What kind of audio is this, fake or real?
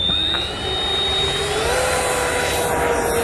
real